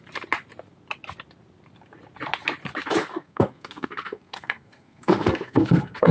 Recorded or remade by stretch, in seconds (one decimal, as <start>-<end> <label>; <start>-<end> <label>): 0.0-3.0 recorded; 3.0-6.1 remade